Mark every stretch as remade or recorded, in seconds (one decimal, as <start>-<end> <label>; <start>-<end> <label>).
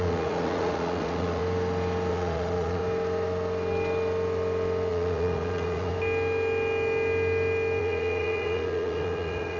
0.0-1.4 remade; 1.4-2.1 recorded; 2.1-2.8 remade; 2.8-4.9 recorded; 4.9-5.9 remade; 5.9-7.8 recorded; 7.8-9.6 remade